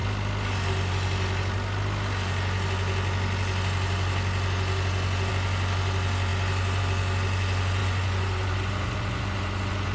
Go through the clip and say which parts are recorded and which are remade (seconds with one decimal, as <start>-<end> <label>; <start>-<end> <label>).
0.0-7.8 recorded; 7.8-9.9 remade